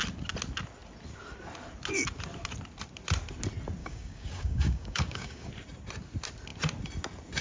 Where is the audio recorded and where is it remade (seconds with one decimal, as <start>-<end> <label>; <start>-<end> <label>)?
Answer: 0.0-3.8 recorded; 3.8-5.5 remade; 5.5-7.4 recorded